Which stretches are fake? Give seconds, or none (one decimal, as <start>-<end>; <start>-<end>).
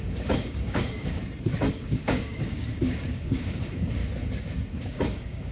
0.0-1.2; 1.7-4.0; 4.7-5.5